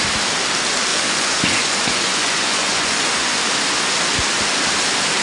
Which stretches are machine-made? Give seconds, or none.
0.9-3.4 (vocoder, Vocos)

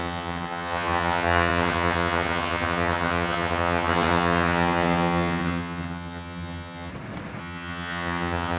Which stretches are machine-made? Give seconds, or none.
0.0-6.9 (vocoder, HiFi-GAN); 7.4-8.6

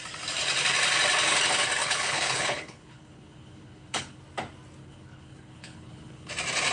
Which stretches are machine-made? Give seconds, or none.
1.8-4.2 (codec, HILCodec); 4.8-6.3